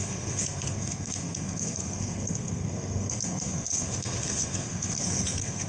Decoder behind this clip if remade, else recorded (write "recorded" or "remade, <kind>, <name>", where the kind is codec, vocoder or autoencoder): remade, codec, SNAC